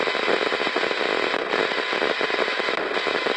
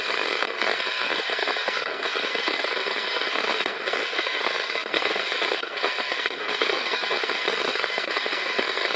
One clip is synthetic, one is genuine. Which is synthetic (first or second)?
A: second